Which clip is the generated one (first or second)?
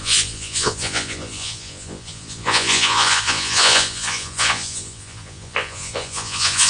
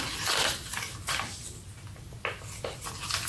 first